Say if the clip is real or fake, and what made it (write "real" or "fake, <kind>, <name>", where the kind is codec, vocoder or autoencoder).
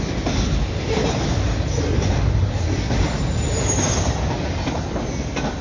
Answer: real